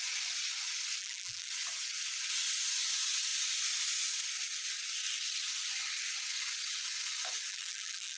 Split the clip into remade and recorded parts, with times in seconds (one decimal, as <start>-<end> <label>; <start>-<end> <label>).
0.0-1.0 recorded; 1.0-1.5 remade; 1.5-7.5 recorded; 7.5-8.2 remade